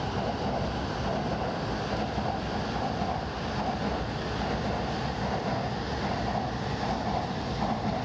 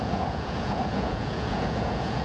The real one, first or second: first